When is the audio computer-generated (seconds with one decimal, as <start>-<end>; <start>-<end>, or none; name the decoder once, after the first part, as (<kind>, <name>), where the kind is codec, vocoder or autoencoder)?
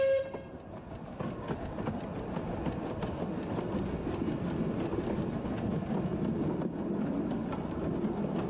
none